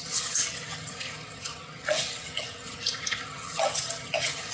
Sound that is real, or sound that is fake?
fake